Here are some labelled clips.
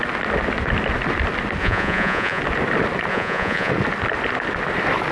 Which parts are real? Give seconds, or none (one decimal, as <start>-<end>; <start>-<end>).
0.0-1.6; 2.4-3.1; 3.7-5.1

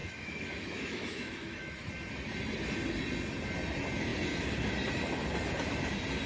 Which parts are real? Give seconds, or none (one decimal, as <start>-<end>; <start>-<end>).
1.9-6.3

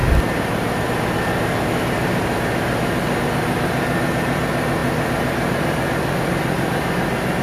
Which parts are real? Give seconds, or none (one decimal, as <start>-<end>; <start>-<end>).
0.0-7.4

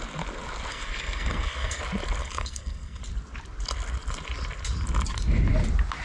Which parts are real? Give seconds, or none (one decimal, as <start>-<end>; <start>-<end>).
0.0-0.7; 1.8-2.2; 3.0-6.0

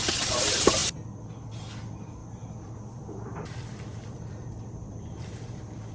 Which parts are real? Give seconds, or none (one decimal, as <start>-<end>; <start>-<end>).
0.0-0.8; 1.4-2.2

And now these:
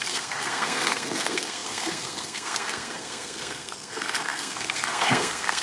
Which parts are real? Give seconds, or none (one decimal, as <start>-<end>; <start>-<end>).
none

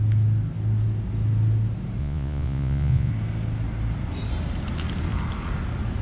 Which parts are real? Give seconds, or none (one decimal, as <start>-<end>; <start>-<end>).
0.0-2.0; 3.1-6.0